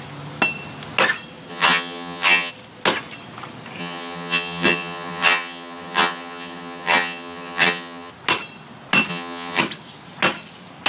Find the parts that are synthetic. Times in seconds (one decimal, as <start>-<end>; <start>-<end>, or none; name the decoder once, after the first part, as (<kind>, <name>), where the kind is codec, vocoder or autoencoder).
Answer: 1.5-2.5 (vocoder, HiFi-GAN); 3.8-8.1; 9.1-9.6